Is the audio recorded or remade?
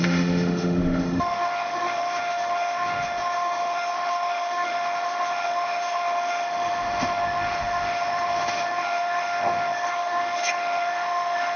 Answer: remade